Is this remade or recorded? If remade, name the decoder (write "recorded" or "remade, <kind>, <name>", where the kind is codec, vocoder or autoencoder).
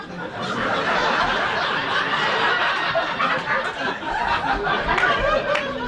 recorded